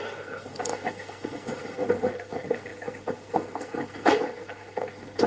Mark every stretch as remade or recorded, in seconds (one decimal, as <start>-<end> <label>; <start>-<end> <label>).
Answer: 0.0-5.3 remade